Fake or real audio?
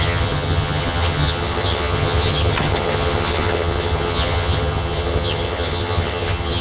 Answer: fake